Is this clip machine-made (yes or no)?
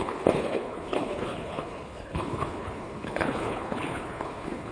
yes